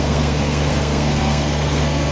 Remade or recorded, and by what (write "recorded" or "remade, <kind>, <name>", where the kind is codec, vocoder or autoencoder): remade, codec, SNAC